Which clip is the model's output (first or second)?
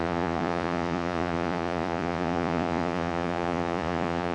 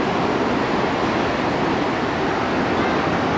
first